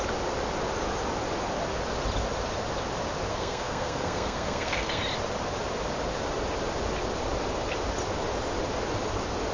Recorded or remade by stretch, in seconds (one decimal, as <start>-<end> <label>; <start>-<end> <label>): 0.0-3.3 recorded; 3.3-5.0 remade; 5.0-9.5 recorded